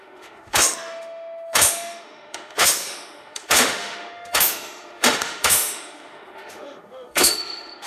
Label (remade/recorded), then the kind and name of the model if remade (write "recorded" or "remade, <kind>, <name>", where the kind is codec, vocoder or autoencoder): remade, autoencoder, DAC-VAE